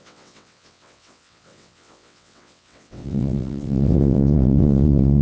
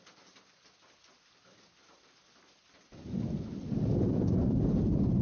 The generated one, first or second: first